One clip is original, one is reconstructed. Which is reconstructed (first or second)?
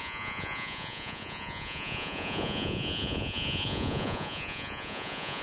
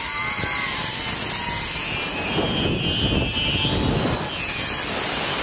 first